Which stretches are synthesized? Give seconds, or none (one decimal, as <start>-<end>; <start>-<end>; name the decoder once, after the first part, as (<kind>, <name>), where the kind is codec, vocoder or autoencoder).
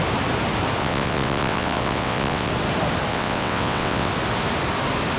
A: 0.8-2.5 (vocoder, WaveNeXt); 3.1-4.1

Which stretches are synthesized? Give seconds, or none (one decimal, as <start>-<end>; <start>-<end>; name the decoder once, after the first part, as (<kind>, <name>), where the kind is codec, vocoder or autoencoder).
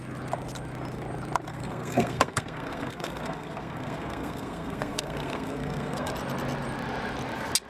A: 1.5-6.1 (codec, SNAC)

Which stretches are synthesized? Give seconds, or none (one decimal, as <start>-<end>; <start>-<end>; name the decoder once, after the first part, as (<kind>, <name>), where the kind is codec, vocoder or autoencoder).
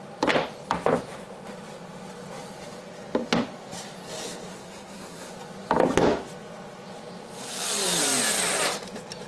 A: 4.5-5.3 (codec, SNAC)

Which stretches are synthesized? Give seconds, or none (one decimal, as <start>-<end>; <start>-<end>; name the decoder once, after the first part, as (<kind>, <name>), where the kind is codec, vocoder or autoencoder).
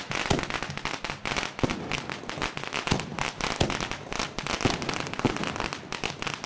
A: none